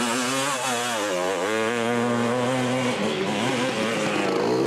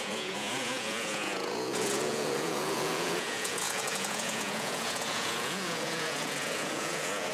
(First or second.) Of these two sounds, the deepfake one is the second